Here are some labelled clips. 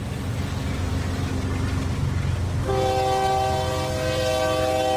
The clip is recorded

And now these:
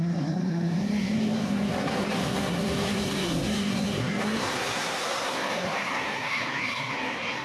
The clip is remade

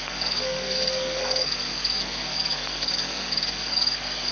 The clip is remade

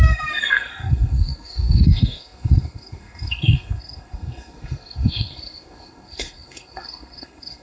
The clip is remade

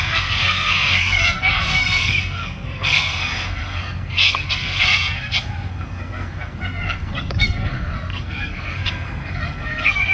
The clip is remade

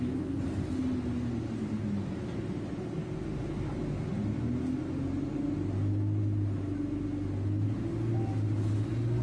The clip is recorded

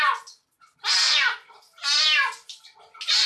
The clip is recorded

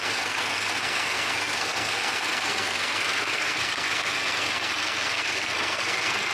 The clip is remade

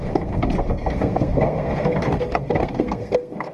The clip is remade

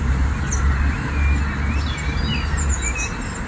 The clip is recorded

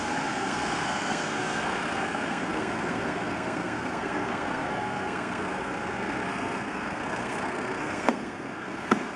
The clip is remade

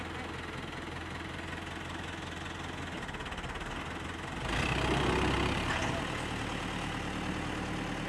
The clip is recorded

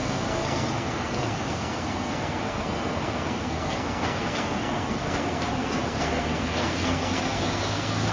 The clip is remade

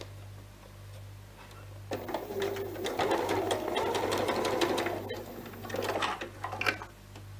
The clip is recorded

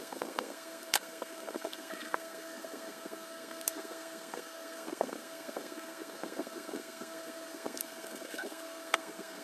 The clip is remade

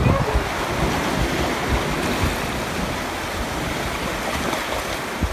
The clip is recorded